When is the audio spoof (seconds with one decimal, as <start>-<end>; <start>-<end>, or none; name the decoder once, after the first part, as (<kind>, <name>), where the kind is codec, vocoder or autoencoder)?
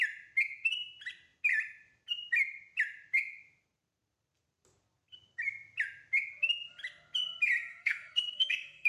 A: 7.7-8.9 (codec, SNAC)